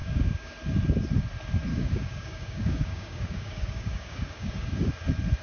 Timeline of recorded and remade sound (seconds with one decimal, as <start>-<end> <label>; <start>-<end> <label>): 0.0-0.5 remade; 0.5-1.7 recorded; 1.7-4.9 remade; 4.9-5.4 recorded